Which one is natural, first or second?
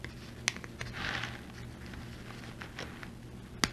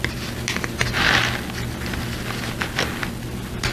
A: first